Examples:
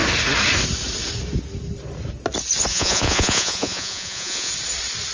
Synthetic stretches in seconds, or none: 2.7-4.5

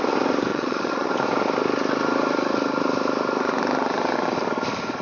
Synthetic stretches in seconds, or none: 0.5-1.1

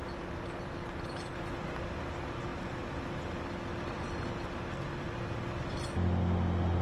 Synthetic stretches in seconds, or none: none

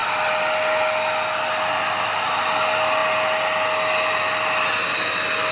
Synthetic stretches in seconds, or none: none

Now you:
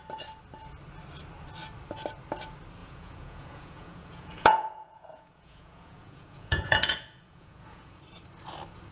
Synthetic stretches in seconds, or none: 2.8-8.0

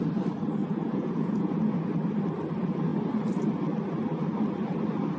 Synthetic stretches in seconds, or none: 0.6-1.9

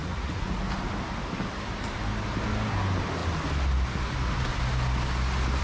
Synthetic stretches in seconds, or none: 0.0-0.6

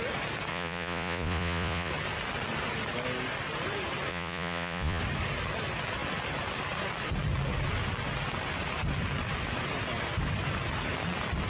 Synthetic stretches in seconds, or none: 0.5-1.9; 4.1-5.0